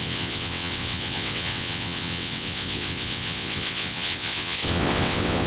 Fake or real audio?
fake